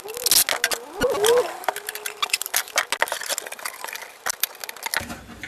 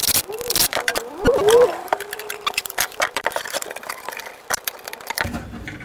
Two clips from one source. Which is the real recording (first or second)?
first